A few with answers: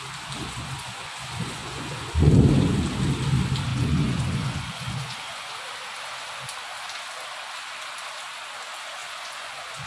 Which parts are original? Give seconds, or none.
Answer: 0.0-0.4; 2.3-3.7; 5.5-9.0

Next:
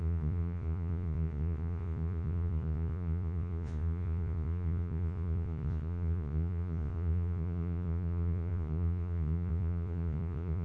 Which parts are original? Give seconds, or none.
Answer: none

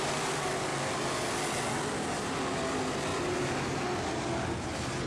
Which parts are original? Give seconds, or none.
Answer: 0.0-5.1

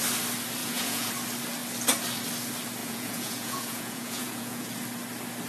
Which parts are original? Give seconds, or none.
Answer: 0.0-0.6; 1.1-2.8; 4.7-5.5

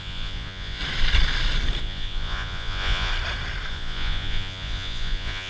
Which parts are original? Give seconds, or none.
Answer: 0.8-1.8; 3.1-3.7

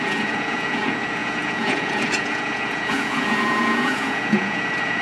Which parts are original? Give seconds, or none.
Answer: none